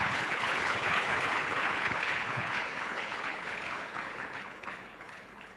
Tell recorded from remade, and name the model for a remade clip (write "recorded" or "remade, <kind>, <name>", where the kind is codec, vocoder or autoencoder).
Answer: remade, codec, HILCodec